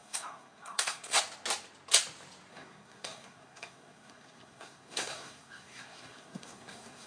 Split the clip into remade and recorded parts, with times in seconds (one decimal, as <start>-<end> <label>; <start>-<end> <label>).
0.0-1.2 remade; 1.2-2.5 recorded; 2.5-7.1 remade